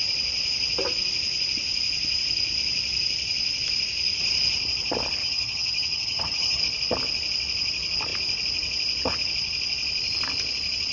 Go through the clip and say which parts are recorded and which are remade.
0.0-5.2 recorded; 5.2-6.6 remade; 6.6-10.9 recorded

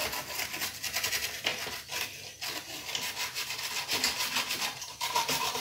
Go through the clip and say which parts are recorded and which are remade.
0.0-1.1 recorded; 1.1-1.5 remade; 1.5-4.6 recorded; 4.6-5.6 remade

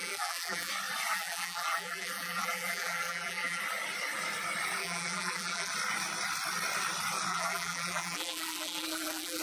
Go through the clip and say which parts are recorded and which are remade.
0.0-0.7 remade; 0.7-1.1 recorded; 1.1-3.6 remade; 3.6-4.8 recorded; 4.8-5.7 remade; 5.7-7.3 recorded; 7.3-9.4 remade

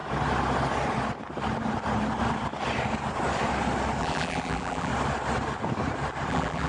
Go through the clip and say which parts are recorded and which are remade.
0.0-4.0 recorded; 4.0-4.9 remade; 4.9-6.3 recorded; 6.3-6.7 remade